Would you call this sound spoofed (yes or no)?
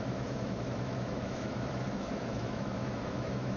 yes